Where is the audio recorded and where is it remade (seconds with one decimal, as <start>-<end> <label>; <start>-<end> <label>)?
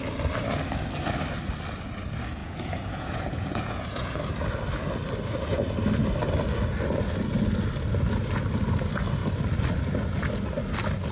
0.0-2.4 recorded; 2.4-4.2 remade; 4.2-11.1 recorded